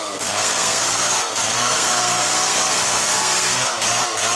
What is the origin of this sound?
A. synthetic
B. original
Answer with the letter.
A